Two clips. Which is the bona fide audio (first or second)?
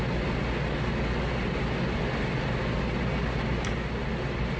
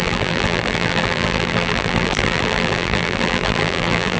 first